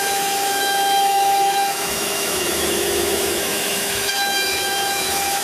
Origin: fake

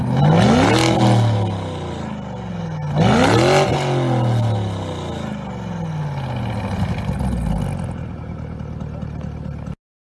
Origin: real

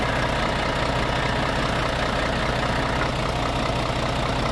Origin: real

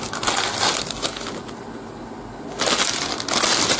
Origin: real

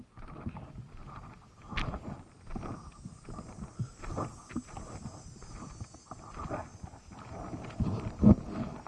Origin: real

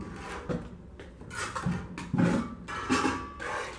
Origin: real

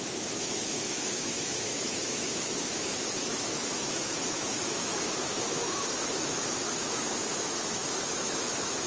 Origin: fake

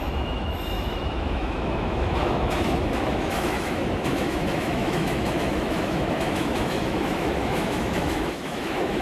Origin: fake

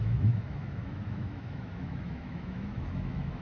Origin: fake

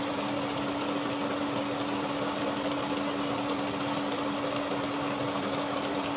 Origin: real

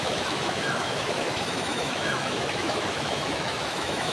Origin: fake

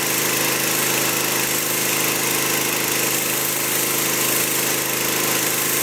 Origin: real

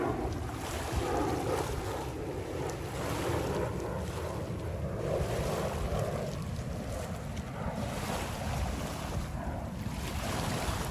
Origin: real